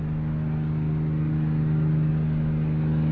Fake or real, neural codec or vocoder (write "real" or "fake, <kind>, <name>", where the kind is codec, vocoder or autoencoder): real